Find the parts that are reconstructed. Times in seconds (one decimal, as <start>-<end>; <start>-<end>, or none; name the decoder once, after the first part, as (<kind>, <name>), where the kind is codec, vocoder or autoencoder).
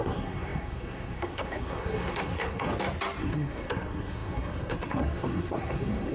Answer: 0.0-2.7 (codec, SNAC); 3.2-6.1